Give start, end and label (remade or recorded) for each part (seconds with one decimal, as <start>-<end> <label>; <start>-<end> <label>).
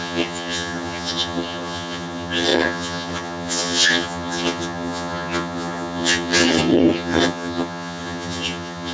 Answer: 0.0-8.9 remade